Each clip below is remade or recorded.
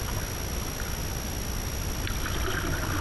recorded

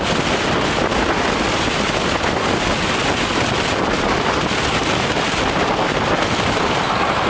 recorded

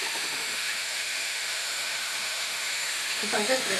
remade